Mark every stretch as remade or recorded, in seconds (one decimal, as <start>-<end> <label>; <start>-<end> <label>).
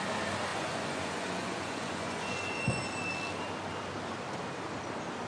0.0-0.5 recorded; 0.5-2.8 remade; 2.8-5.3 recorded